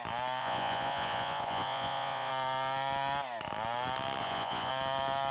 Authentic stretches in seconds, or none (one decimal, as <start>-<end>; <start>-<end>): 0.0-0.4; 2.3-4.2; 4.7-5.3